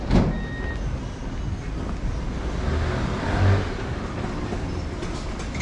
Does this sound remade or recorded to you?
recorded